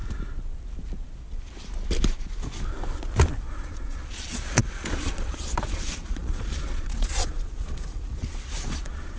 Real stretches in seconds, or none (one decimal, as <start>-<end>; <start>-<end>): 0.0-3.4